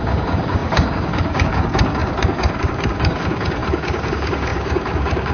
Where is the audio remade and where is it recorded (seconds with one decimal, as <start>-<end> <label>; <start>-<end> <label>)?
0.0-5.3 remade